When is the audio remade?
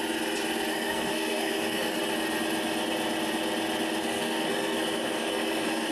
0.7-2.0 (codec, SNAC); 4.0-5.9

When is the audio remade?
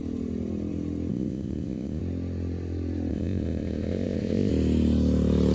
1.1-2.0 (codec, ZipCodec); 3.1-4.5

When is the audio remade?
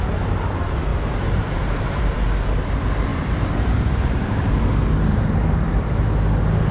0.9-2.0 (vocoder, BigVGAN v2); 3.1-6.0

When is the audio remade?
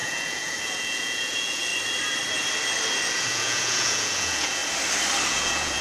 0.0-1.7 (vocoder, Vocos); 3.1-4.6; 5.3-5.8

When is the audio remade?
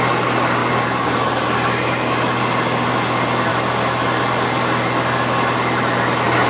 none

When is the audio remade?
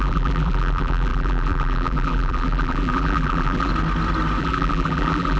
0.0-3.7 (vocoder, BigVGAN v2); 4.4-5.4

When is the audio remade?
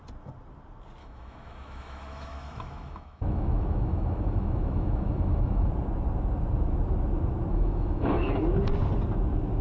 1.0-5.7 (autoencoder, DAC-VAE); 7.5-8.4